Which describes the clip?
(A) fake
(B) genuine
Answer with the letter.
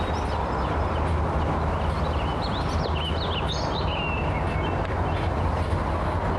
B